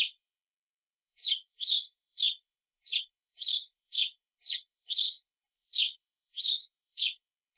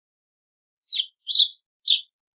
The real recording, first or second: second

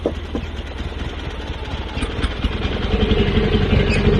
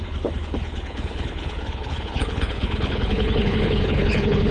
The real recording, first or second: first